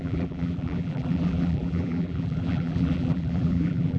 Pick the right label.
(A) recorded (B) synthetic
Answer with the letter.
B